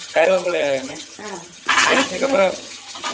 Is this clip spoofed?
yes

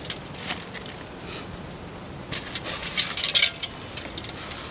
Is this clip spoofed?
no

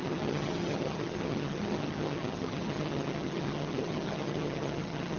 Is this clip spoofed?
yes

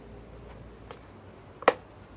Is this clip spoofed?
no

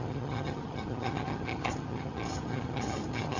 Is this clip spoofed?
yes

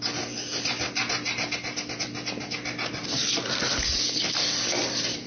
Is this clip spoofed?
no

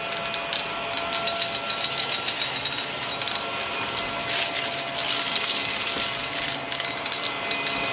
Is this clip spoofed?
no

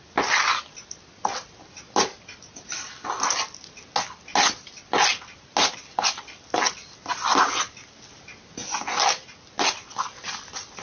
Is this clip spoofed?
no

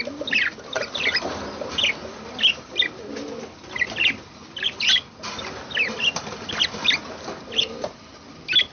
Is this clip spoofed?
no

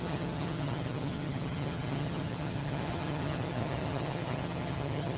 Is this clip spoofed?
yes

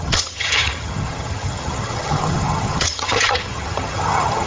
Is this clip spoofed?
yes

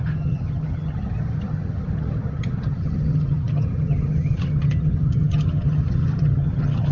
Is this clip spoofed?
yes